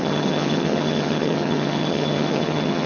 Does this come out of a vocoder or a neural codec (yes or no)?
yes